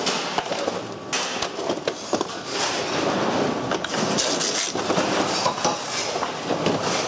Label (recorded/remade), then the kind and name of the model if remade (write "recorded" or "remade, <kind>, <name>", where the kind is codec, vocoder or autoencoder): recorded